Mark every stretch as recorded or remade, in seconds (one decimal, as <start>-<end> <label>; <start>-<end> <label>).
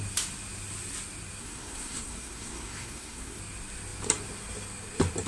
0.0-1.4 recorded; 1.4-3.4 remade; 3.4-5.3 recorded